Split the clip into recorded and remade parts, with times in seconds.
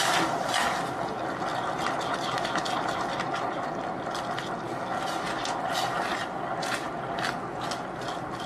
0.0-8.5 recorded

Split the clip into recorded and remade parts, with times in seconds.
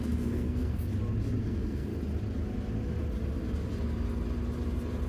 0.0-0.9 remade; 0.9-1.4 recorded; 1.4-1.9 remade; 1.9-5.1 recorded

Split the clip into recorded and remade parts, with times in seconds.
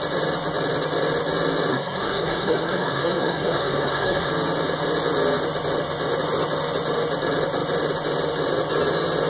0.0-1.7 recorded; 1.7-4.3 remade; 4.3-9.3 recorded